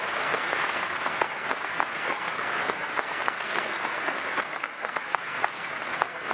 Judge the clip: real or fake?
fake